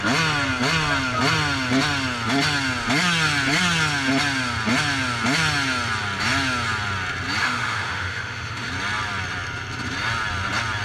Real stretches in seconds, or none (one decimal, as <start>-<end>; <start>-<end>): 0.0-7.4; 8.7-10.8